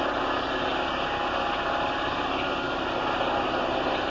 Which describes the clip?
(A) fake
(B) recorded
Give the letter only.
B